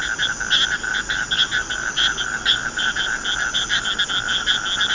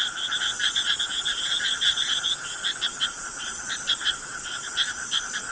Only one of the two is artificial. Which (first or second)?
second